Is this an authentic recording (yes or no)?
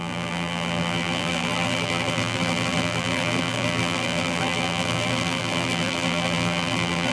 no